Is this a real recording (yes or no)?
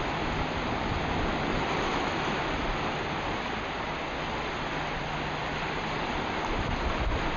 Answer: yes